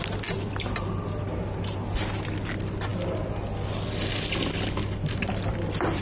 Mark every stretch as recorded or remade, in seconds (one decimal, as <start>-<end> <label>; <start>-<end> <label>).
0.0-6.0 recorded